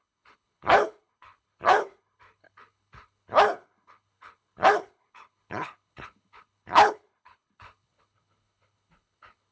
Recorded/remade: remade